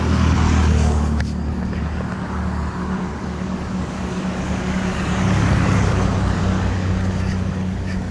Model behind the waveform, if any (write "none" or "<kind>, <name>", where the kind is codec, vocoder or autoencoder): codec, DAC